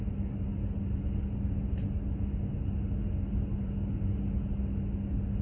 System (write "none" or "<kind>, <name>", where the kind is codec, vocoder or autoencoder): none